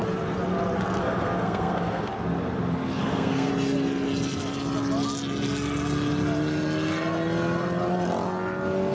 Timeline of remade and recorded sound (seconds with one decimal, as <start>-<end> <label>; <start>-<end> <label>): 0.0-1.0 recorded; 1.0-2.1 remade; 2.1-3.0 recorded; 3.0-3.5 remade; 3.5-8.9 recorded